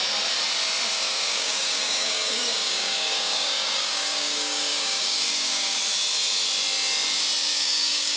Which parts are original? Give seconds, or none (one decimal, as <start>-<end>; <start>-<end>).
0.0-0.9; 5.8-7.4